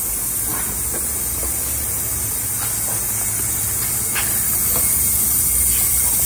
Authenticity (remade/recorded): recorded